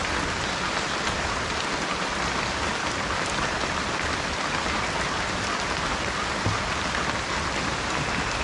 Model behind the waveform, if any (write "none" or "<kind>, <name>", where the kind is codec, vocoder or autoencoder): none